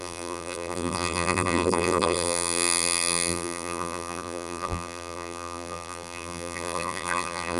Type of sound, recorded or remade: remade